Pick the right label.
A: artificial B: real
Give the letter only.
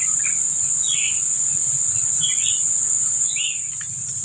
B